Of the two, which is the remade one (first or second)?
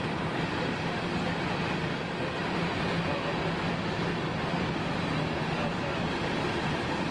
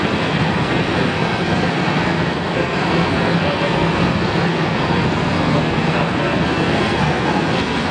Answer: second